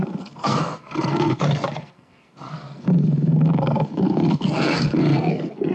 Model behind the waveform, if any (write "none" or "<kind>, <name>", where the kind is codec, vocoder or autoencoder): codec, SNAC